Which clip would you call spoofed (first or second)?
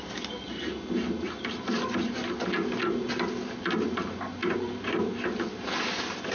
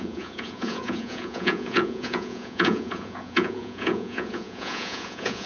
second